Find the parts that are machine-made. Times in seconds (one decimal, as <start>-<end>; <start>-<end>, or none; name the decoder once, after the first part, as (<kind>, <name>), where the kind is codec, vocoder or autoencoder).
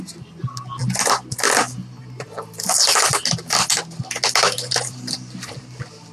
none